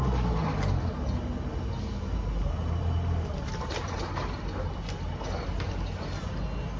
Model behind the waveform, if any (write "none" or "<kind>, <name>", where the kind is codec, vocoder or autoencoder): none